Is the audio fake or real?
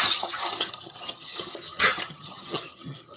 fake